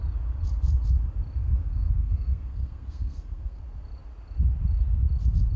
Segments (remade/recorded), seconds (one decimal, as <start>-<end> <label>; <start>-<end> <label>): 0.0-1.4 recorded; 1.4-3.6 remade; 3.6-5.6 recorded